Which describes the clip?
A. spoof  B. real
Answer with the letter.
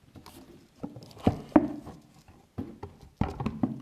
B